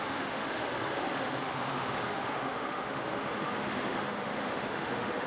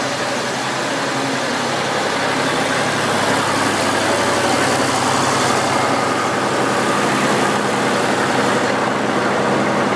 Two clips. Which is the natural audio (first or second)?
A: second